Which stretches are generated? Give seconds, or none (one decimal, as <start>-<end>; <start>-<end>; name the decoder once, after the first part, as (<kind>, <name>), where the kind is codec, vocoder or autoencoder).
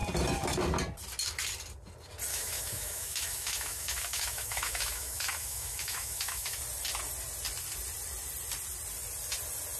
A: 2.3-6.6 (autoencoder, DAC-VAE)